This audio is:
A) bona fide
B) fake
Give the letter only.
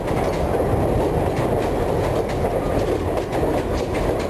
A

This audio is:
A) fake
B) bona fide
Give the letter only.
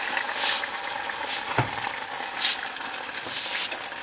B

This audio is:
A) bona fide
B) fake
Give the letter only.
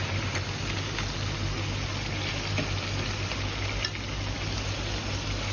A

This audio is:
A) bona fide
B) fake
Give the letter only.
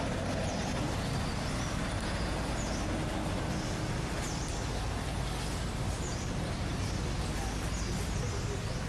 A